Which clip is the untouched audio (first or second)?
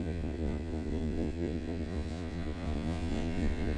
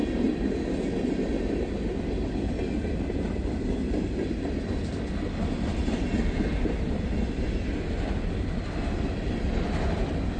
second